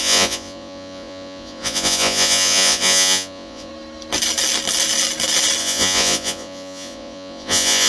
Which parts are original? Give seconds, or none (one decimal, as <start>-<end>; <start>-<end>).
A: 3.7-5.6